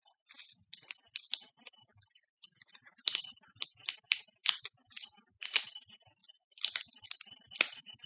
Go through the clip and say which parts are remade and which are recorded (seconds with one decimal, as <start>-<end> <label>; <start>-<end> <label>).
0.0-8.1 recorded